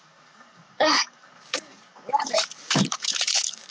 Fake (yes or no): yes